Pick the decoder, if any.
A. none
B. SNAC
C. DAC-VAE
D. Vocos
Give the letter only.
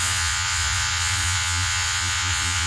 D